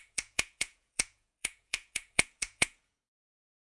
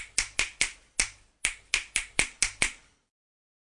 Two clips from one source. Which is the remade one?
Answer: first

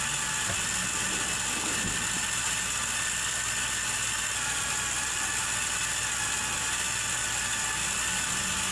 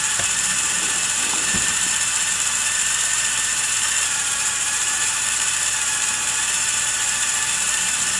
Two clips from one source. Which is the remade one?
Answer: second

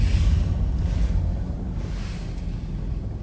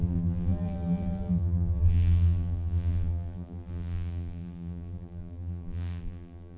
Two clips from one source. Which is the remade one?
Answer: second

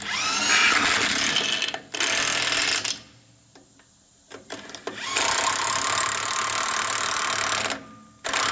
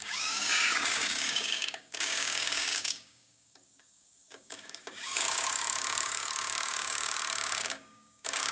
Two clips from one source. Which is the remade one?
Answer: second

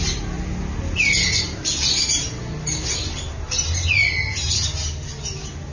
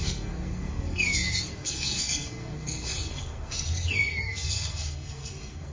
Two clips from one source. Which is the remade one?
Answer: second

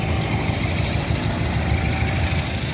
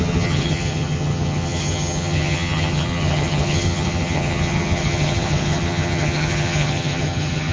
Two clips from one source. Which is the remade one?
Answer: second